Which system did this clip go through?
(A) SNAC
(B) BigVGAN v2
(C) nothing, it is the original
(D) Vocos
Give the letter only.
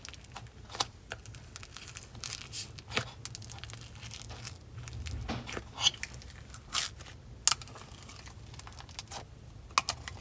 C